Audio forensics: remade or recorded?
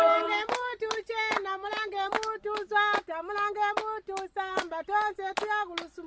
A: recorded